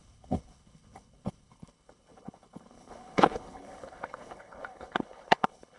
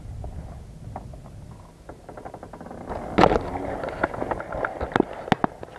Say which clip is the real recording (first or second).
second